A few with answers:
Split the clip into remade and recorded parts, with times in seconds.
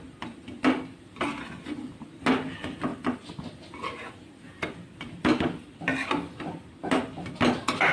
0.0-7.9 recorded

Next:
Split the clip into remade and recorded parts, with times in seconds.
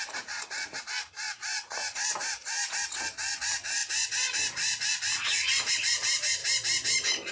0.0-6.4 remade; 6.4-7.3 recorded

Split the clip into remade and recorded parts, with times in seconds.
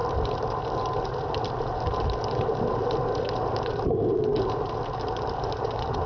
0.0-6.1 recorded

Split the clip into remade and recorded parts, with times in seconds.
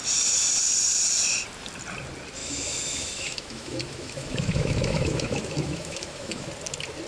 0.0-2.4 recorded; 2.4-6.5 remade; 6.5-7.1 recorded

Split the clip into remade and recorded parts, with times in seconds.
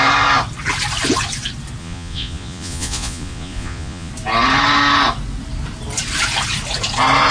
0.0-1.8 recorded; 1.8-4.1 remade; 4.1-7.3 recorded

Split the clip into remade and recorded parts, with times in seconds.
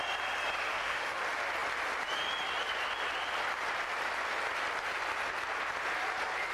0.0-0.7 recorded; 0.7-1.2 remade; 1.2-6.5 recorded